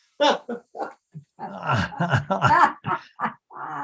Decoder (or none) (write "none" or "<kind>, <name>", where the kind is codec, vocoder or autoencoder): none